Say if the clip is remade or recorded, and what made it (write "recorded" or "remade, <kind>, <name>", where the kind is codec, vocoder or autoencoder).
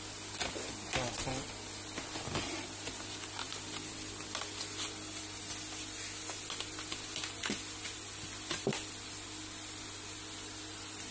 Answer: recorded